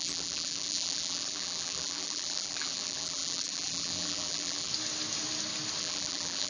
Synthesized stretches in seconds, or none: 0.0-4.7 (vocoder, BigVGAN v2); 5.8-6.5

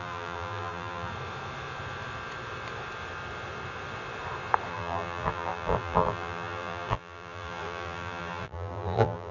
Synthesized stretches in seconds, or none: 0.0-1.1 (vocoder, BigVGAN v2); 4.7-9.3

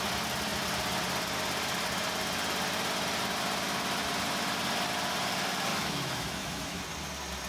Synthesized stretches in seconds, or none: 5.7-6.8 (autoencoder, DAC-VAE)

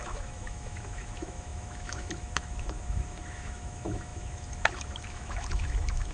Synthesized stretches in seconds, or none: 0.0-6.1 (autoencoder, DAC-VAE)

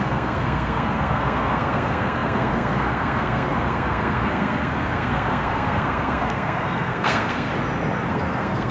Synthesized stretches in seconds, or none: 0.0-7.5 (codec, SNAC); 8.1-8.7

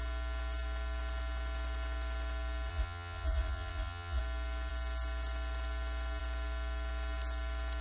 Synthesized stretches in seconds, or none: 2.7-4.2 (vocoder, Vocos)

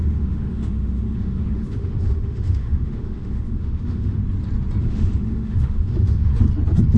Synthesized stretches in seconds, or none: 0.0-4.2 (autoencoder, DAC-VAE); 4.8-6.3